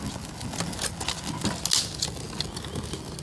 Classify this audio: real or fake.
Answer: real